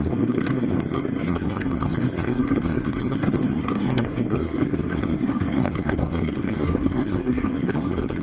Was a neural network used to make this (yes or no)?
yes